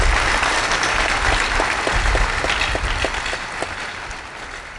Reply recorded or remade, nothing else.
recorded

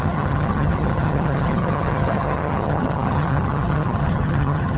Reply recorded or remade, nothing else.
remade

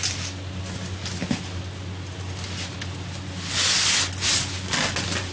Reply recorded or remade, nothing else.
recorded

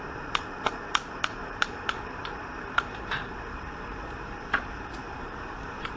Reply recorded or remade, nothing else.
remade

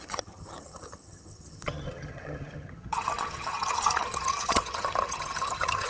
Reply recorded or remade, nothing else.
remade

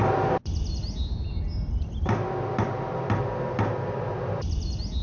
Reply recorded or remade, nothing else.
recorded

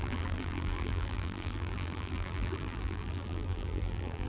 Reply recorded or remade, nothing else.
remade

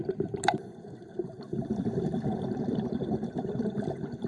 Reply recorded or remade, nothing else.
remade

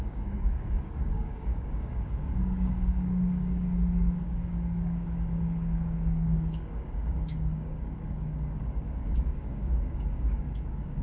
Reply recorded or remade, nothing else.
remade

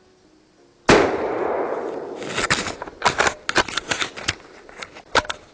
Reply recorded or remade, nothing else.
recorded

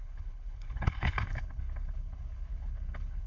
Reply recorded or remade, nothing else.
remade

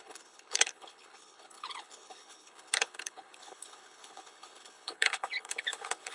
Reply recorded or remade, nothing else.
remade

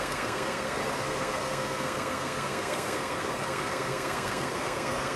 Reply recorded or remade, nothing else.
remade